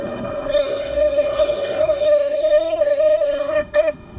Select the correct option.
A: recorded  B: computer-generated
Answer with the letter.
B